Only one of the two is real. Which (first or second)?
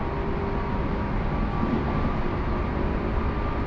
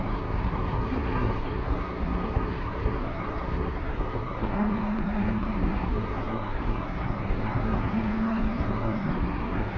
first